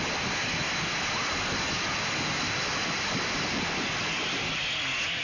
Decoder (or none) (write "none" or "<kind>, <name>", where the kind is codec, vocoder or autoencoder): none